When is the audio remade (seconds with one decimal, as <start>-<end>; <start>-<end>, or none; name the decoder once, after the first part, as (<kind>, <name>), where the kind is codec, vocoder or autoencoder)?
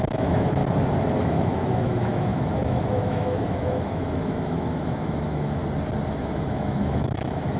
0.0-0.6 (autoencoder, DAC-VAE); 1.2-5.6; 6.2-7.6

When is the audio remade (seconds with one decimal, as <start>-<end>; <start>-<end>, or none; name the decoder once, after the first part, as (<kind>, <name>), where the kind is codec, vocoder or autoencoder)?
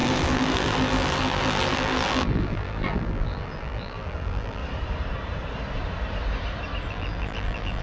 0.0-4.6 (vocoder, BigVGAN v2); 6.9-7.8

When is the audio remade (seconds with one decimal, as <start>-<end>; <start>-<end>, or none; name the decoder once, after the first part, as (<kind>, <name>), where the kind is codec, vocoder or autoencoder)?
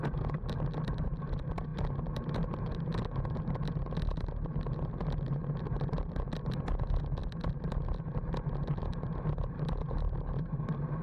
none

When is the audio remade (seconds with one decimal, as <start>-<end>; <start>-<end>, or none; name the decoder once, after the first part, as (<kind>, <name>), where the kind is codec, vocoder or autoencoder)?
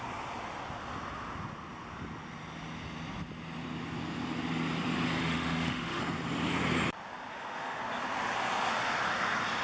5.2-6.0 (autoencoder, DAC-VAE); 7.3-7.8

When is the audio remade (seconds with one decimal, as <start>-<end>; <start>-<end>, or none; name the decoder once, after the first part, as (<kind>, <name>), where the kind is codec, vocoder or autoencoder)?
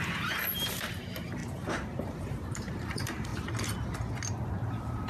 0.0-1.4 (vocoder, BigVGAN v2); 2.0-3.3; 4.4-5.1